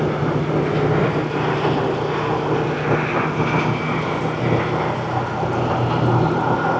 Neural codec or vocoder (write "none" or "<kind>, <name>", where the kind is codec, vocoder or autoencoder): none